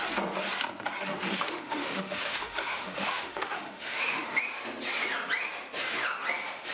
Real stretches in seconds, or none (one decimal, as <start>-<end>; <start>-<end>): 0.0-1.3; 4.4-6.7